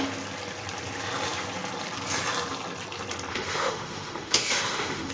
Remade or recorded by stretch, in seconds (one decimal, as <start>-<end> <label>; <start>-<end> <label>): 0.0-3.3 recorded; 3.3-5.1 remade